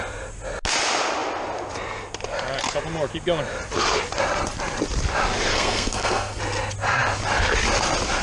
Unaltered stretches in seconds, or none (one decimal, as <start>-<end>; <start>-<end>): 0.0-5.5; 6.4-8.2